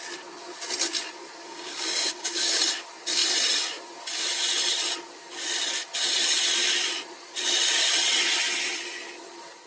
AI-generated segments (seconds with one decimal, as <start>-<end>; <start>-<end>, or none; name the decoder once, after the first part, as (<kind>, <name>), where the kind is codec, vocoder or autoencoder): 1.4-2.6 (codec, DAC)